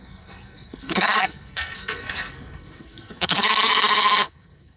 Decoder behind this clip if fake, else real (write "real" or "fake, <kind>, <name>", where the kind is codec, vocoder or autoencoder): fake, codec, SNAC